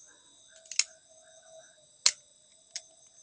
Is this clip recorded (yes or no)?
yes